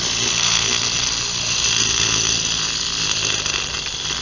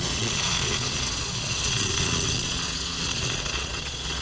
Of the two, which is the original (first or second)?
first